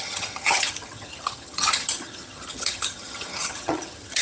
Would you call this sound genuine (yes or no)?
no